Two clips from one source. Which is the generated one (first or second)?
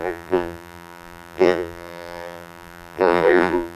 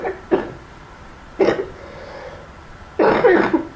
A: first